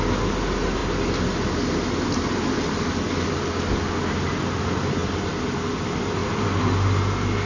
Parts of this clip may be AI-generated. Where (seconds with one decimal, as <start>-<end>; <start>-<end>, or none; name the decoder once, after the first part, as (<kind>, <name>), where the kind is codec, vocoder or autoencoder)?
none